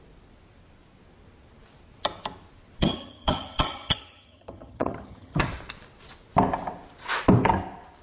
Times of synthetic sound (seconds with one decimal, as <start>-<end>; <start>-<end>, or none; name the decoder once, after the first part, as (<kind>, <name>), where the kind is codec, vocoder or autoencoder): 2.8-5.5 (vocoder, HiFi-GAN)